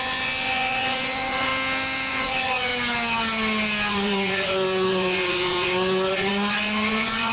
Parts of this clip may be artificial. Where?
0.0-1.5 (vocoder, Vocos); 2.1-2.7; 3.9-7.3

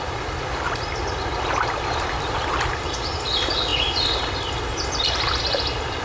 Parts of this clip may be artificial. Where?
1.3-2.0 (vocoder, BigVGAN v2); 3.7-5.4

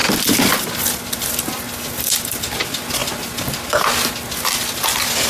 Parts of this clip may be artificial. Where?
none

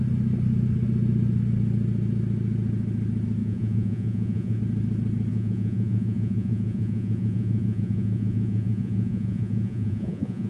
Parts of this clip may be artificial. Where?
3.4-4.6 (vocoder, Vocos); 5.3-10.5